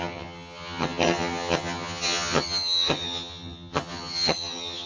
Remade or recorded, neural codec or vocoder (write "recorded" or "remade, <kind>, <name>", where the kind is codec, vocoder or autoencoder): remade, vocoder, HiFi-GAN